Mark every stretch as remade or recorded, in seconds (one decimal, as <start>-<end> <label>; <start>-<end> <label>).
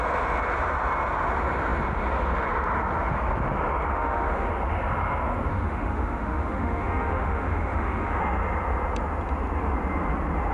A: 0.0-3.9 recorded; 3.9-4.5 remade; 4.5-5.5 recorded; 5.5-8.2 remade; 8.2-10.5 recorded